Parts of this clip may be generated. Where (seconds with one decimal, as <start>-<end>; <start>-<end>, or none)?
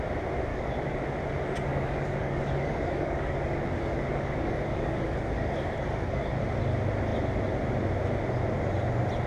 0.5-1.0; 1.7-6.4